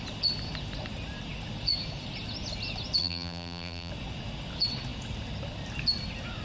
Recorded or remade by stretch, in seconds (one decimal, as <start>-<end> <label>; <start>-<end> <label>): 0.0-3.0 recorded; 3.0-3.9 remade; 3.9-6.4 recorded